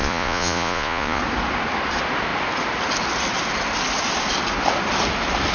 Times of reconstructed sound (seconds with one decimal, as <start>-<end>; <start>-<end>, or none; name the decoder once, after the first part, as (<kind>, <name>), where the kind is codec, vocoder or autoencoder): 0.0-1.2 (vocoder, Vocos)